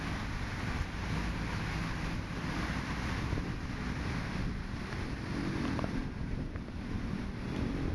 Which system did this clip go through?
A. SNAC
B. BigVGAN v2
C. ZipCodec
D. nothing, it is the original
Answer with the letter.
D